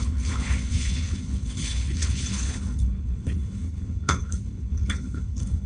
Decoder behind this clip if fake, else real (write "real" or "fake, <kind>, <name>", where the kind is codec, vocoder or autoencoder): fake, codec, HILCodec